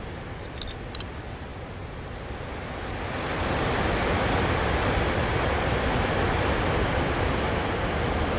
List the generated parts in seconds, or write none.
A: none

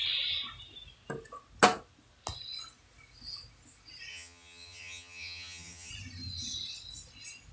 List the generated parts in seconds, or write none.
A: 4.1-5.9 (vocoder, HiFi-GAN)

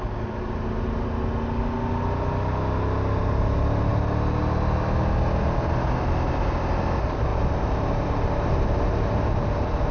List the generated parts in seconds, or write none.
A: none